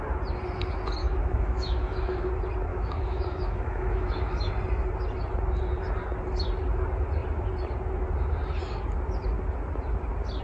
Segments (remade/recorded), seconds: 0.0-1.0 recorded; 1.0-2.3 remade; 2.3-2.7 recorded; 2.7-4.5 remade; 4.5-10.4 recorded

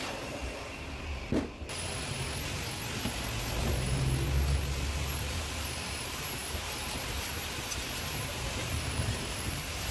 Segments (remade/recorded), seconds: 0.0-0.4 remade; 0.4-5.2 recorded; 5.2-9.9 remade

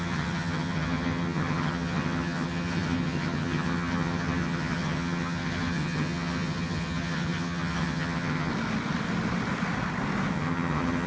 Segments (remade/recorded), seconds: 0.0-8.5 remade; 8.5-10.3 recorded; 10.3-11.1 remade

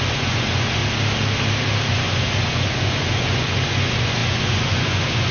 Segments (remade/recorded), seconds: 0.0-0.8 remade; 0.8-1.9 recorded; 1.9-5.3 remade

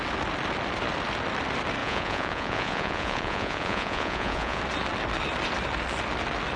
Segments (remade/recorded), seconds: 0.0-1.8 recorded; 1.8-4.6 remade; 4.6-6.6 recorded

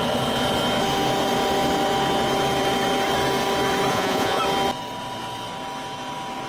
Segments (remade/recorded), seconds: 0.0-3.9 recorded; 3.9-4.4 remade; 4.4-6.5 recorded